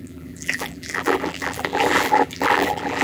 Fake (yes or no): yes